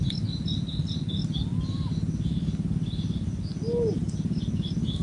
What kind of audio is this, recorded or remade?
recorded